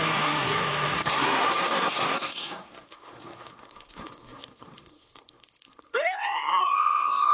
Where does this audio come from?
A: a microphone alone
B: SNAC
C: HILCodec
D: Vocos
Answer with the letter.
B